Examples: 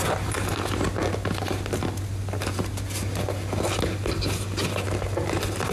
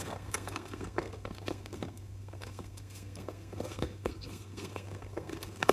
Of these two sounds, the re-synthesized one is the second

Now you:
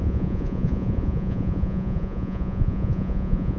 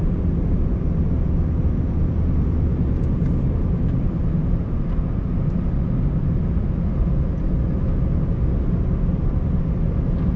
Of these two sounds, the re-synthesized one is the first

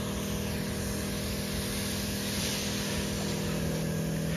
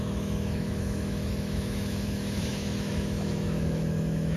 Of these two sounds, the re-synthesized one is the second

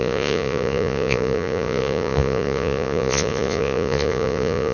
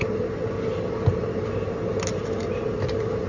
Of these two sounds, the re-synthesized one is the first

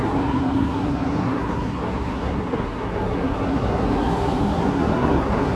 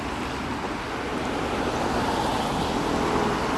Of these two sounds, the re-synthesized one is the first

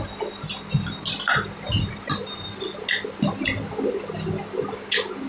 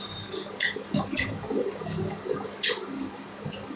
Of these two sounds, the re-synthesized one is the second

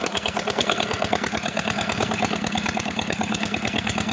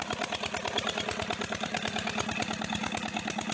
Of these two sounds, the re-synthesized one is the first